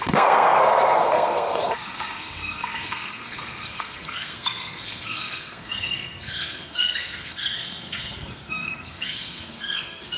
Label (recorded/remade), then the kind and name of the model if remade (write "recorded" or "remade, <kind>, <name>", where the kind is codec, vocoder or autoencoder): remade, codec, SNAC